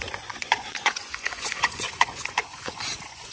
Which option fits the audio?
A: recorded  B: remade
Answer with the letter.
B